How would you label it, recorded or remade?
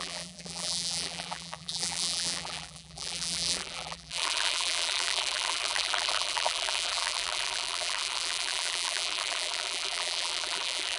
remade